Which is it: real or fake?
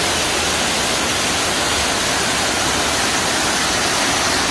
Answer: real